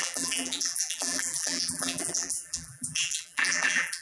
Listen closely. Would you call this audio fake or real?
fake